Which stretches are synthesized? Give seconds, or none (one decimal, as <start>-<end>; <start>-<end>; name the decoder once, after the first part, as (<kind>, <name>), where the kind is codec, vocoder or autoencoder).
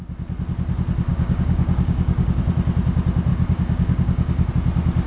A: 1.1-2.4 (codec, DAC); 3.3-4.5